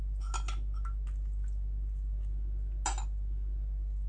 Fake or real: real